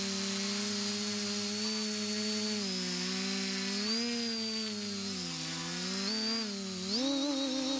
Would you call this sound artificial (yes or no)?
no